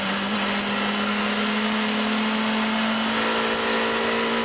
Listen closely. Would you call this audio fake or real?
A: real